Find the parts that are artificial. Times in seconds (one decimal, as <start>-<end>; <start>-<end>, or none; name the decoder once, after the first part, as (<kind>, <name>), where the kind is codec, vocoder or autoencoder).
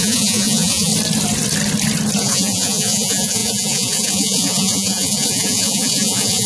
0.0-0.9 (vocoder, Vocos); 2.2-6.5